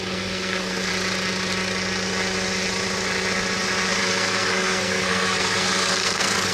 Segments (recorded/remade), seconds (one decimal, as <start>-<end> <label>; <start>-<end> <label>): 0.0-0.9 remade; 0.9-4.0 recorded; 4.0-6.5 remade